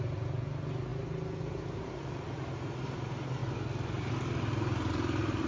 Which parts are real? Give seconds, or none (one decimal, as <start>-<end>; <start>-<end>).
0.0-5.5